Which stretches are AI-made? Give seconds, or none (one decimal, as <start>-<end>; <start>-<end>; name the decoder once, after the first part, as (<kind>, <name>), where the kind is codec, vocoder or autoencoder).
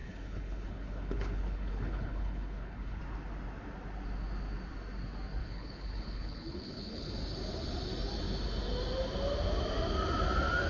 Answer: 0.0-3.0 (codec, HILCodec); 5.4-7.1